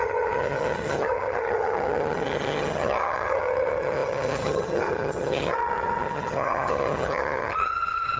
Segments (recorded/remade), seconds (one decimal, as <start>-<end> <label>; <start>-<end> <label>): 0.0-8.2 remade